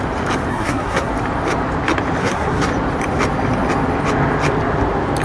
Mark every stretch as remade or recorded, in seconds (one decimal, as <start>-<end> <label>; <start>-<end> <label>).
0.0-0.5 recorded; 0.5-1.1 remade; 1.1-2.2 recorded; 2.2-2.7 remade; 2.7-5.2 recorded